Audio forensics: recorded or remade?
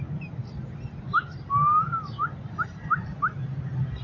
recorded